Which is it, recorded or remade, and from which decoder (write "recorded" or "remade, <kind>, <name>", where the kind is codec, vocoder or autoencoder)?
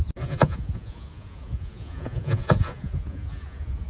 remade, vocoder, Vocos